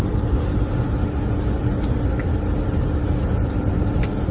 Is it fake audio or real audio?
real